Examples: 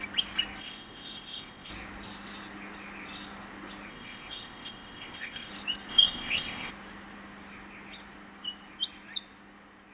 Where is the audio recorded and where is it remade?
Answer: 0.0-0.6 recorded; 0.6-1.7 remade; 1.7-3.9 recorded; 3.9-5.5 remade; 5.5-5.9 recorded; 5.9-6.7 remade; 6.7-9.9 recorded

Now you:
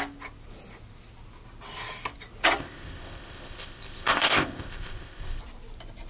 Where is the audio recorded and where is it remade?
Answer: 0.0-2.6 recorded; 2.6-5.4 remade; 5.4-6.1 recorded

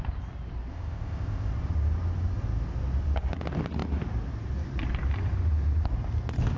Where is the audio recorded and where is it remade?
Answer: 0.0-0.7 recorded; 0.7-1.5 remade; 1.5-6.6 recorded